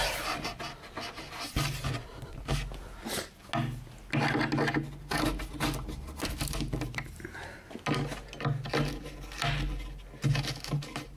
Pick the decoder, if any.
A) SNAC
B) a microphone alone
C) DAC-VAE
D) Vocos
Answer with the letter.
B